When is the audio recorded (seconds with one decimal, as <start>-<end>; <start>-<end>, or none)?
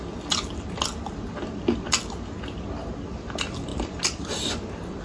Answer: 0.0-3.7